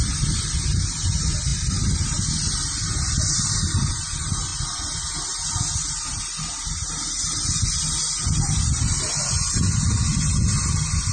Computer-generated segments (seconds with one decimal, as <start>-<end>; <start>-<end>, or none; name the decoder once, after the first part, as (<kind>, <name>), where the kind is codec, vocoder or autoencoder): none